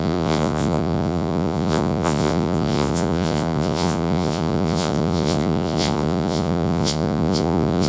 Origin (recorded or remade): remade